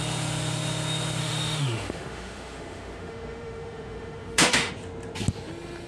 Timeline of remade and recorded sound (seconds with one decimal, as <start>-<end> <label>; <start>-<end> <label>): 0.0-1.2 recorded; 1.2-4.7 remade; 4.7-5.9 recorded